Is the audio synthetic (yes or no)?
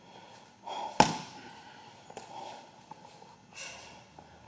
no